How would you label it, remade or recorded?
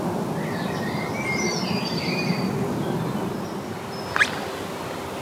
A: recorded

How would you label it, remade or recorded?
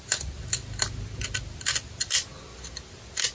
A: recorded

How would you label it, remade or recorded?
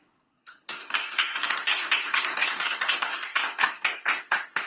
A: remade